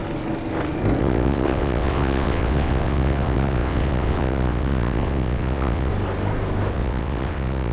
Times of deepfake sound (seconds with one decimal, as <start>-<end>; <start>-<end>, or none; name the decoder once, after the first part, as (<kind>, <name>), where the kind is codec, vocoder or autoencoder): 1.0-5.9 (vocoder, WaveNeXt); 6.7-7.7